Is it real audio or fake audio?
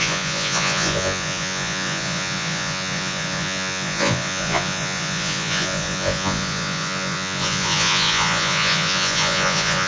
fake